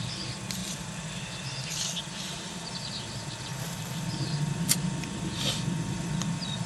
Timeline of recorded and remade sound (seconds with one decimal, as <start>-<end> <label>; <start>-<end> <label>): 0.0-6.7 remade